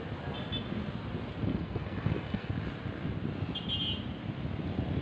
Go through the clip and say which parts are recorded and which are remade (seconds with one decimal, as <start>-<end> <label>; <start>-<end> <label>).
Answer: 0.0-1.5 recorded; 1.5-2.5 remade; 2.5-5.0 recorded